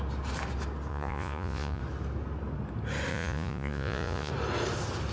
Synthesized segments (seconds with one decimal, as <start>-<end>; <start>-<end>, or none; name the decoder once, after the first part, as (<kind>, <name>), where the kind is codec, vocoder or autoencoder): 0.9-1.8 (vocoder, Vocos); 3.1-4.3